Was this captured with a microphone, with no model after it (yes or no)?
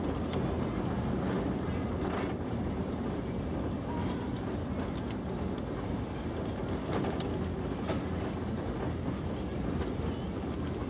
yes